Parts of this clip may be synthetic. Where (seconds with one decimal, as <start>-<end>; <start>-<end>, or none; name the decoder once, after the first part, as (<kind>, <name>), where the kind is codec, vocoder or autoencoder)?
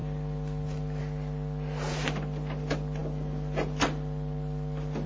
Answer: none